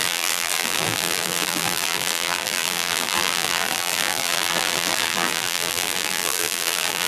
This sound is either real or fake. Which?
fake